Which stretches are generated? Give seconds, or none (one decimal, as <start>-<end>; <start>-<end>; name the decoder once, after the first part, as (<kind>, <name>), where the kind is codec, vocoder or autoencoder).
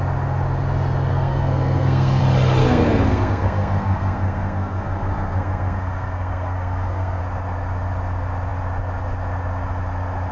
1.1-2.2 (codec, SNAC); 2.6-7.2